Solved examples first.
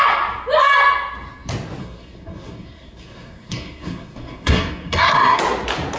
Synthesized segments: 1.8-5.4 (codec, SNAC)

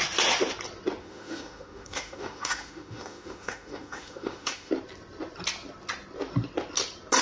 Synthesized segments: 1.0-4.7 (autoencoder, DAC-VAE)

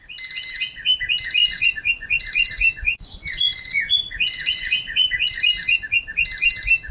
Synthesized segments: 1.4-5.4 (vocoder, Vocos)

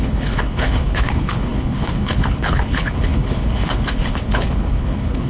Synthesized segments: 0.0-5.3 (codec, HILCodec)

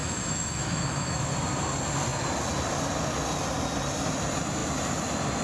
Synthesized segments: 0.0-1.2 (autoencoder, DAC-VAE)

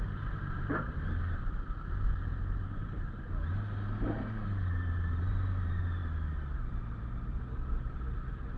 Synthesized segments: 0.0-6.0 (vocoder, BigVGAN v2); 6.6-8.6

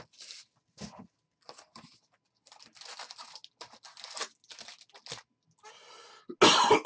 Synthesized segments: none